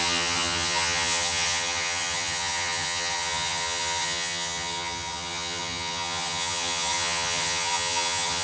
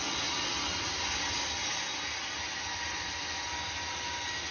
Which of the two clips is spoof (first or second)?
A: first